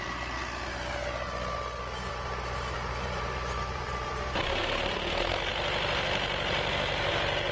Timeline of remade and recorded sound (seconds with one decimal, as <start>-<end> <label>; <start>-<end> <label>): 0.0-0.4 remade; 0.4-2.1 recorded; 2.1-7.5 remade